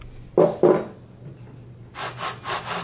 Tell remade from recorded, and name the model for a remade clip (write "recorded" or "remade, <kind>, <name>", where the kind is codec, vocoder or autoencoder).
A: recorded